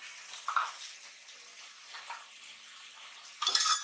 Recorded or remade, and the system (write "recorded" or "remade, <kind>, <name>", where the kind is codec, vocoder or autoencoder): recorded